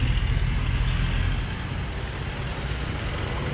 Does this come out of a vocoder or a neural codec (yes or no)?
no